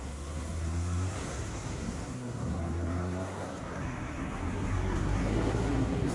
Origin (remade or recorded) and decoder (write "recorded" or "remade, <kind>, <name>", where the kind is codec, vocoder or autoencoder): remade, codec, SNAC